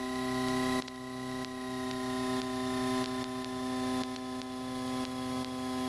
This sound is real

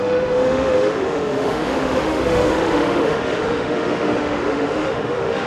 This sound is fake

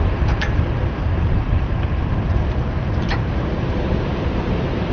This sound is fake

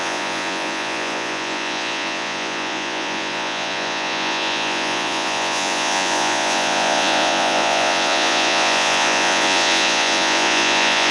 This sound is fake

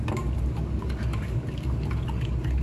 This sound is fake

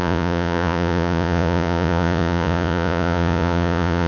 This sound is fake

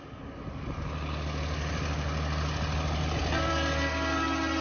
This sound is real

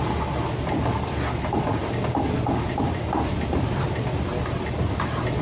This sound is real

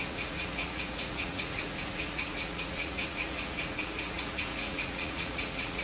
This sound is fake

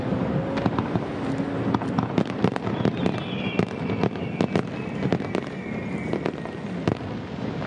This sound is real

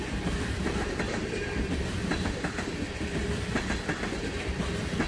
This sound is fake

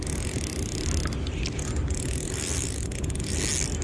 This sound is real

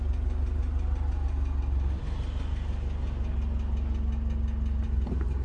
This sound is real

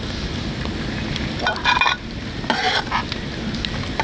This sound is real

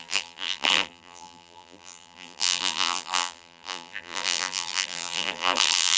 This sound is fake